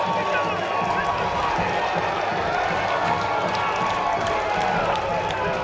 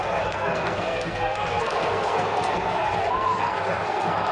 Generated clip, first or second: second